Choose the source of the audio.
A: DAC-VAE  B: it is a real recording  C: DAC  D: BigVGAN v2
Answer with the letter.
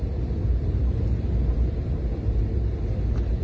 B